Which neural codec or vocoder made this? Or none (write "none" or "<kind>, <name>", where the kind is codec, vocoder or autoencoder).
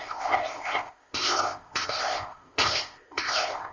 codec, ZipCodec